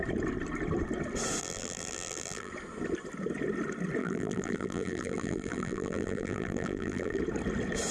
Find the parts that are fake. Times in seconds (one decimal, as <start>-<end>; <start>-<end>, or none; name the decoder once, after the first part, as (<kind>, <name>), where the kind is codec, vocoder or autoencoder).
1.4-2.5 (vocoder, BigVGAN v2); 4.0-7.2